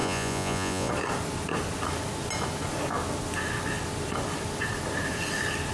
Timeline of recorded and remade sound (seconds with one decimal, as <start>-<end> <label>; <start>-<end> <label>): 0.0-0.9 remade; 0.9-5.7 recorded